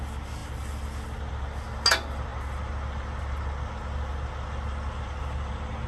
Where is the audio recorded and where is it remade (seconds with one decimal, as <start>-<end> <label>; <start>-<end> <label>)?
0.0-5.9 recorded